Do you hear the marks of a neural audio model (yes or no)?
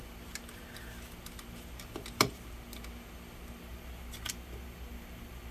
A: no